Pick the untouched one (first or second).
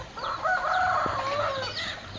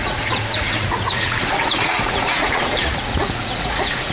first